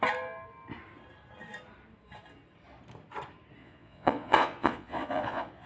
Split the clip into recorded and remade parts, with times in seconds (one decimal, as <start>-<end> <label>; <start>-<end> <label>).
0.0-3.6 recorded; 3.6-5.7 remade